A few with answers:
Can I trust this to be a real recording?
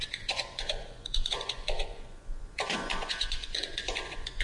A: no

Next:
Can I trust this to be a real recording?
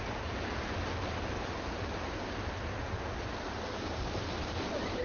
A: no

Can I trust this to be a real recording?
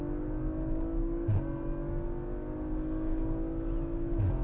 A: yes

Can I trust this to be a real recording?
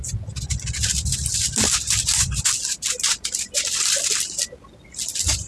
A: yes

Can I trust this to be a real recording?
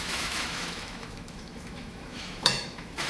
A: no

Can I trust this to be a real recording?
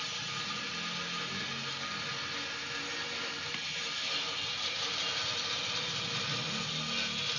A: yes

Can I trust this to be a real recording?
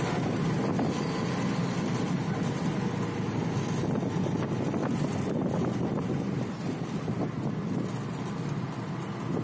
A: yes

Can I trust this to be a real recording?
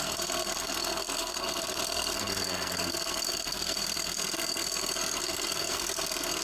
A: no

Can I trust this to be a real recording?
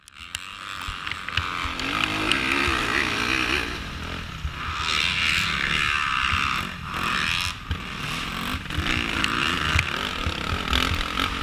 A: yes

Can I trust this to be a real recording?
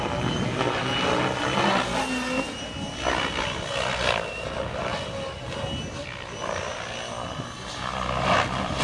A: yes